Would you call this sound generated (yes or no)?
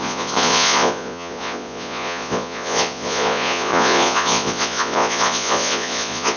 yes